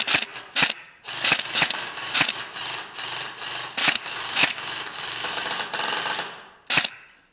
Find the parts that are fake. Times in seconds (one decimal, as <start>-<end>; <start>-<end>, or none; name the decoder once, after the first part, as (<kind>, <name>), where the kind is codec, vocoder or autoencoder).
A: 1.3-2.1 (codec, DAC); 3.8-5.5